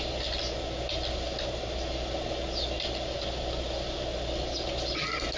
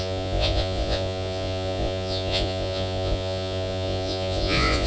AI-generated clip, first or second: second